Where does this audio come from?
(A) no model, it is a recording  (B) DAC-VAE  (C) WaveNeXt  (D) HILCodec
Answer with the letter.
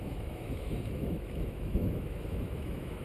B